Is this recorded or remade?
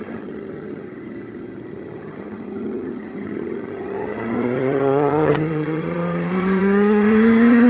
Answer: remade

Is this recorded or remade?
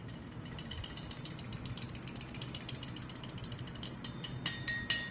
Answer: recorded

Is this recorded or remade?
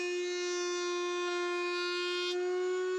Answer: recorded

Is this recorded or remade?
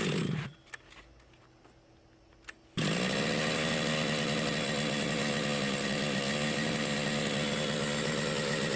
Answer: recorded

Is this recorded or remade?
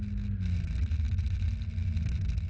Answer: recorded